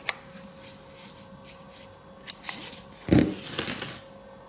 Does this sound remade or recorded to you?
recorded